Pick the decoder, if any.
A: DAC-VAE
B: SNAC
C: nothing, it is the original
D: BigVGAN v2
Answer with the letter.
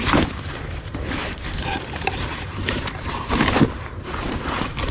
D